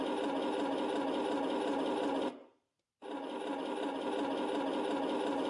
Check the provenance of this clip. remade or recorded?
recorded